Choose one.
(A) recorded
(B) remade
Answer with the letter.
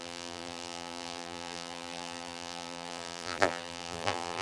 B